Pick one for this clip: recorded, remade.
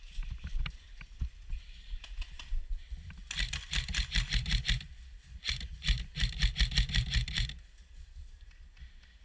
recorded